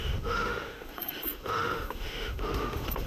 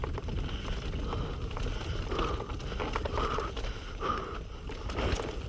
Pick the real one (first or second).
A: second